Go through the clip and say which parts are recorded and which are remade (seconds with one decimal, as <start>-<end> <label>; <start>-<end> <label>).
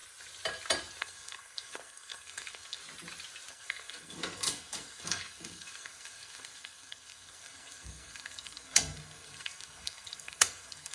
0.0-1.0 recorded; 1.0-2.8 remade; 2.8-3.5 recorded; 3.5-10.9 remade